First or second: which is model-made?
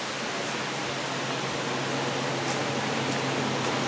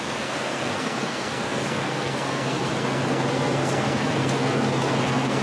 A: second